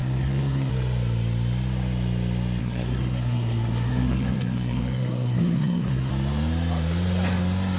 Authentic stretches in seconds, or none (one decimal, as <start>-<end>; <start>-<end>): 0.7-2.6; 6.1-7.8